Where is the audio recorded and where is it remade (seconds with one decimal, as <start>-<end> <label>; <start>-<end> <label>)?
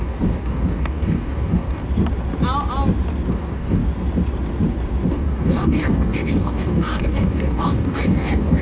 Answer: 0.0-1.8 remade; 1.8-3.3 recorded; 3.3-3.8 remade; 3.8-5.1 recorded; 5.1-8.6 remade